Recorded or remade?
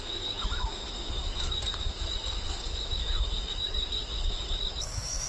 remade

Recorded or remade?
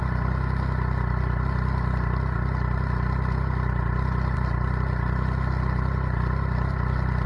recorded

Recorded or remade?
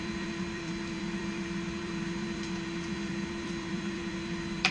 remade